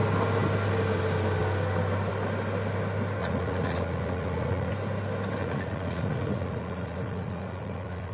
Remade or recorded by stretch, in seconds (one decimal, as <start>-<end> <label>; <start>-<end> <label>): 0.0-3.2 recorded; 3.2-4.7 remade; 4.7-5.4 recorded; 5.4-8.1 remade